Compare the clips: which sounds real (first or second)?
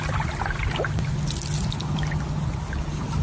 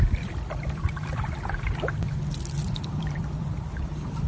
first